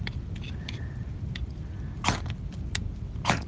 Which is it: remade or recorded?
recorded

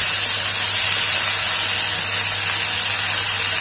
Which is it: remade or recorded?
recorded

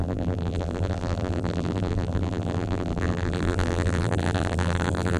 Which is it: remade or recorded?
remade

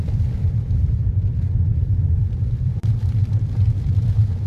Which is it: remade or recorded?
remade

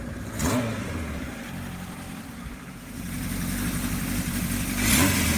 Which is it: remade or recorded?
recorded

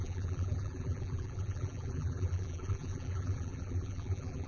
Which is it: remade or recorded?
remade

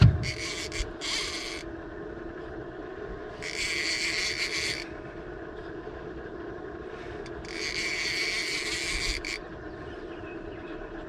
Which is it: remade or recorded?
remade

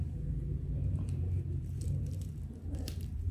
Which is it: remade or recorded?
remade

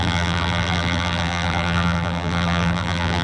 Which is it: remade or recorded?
remade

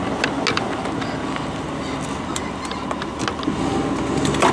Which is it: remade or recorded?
recorded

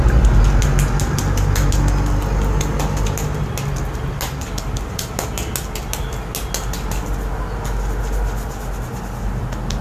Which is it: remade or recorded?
recorded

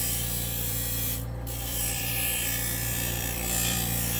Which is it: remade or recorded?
remade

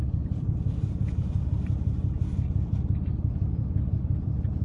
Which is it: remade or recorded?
remade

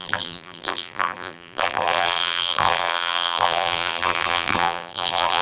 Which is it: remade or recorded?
remade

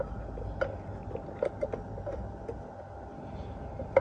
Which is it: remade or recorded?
recorded